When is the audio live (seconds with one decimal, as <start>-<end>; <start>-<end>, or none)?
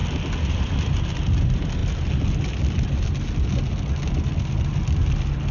0.0-5.5